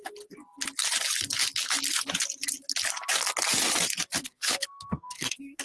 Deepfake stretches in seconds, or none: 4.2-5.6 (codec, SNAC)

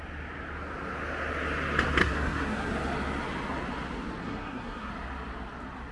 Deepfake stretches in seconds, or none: 2.0-2.7 (codec, SNAC); 4.2-4.9

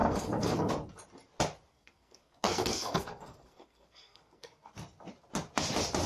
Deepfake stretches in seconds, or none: 0.0-0.7 (codec, SNAC); 1.7-4.7

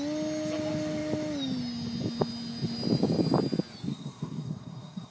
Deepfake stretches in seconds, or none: 3.9-5.1 (codec, SNAC)